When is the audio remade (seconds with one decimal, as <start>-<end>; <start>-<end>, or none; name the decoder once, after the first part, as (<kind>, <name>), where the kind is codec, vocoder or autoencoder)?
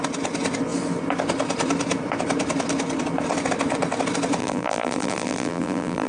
4.4-6.1 (vocoder, BigVGAN v2)